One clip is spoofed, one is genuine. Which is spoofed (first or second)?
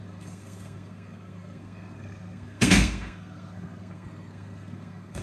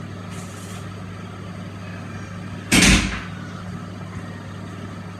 first